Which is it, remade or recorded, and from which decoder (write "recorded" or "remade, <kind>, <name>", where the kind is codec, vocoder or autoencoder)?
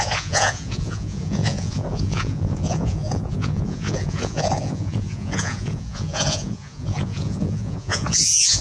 remade, vocoder, Vocos